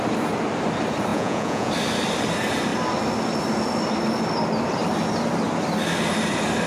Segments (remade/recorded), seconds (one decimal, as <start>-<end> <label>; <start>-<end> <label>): 0.0-1.1 recorded; 1.1-1.7 remade; 1.7-6.7 recorded